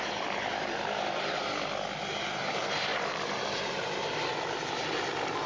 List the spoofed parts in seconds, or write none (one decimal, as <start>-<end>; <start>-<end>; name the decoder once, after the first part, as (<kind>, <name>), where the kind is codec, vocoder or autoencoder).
2.9-3.8 (vocoder, BigVGAN v2)